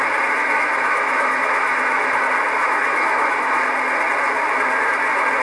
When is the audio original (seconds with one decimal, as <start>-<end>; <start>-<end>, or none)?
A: 0.0-0.4; 2.2-2.6; 3.6-5.4